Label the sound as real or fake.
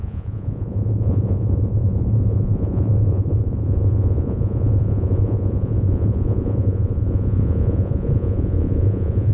fake